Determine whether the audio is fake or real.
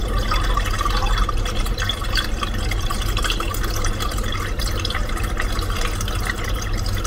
real